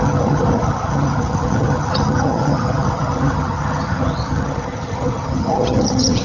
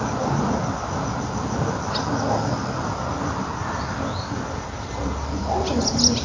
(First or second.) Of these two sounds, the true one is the second